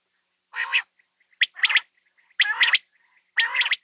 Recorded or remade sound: recorded